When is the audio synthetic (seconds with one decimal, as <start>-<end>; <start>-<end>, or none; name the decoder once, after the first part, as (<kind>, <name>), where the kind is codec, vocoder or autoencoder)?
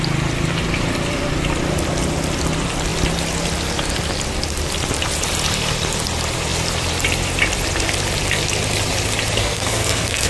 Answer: 9.4-10.3 (codec, SNAC)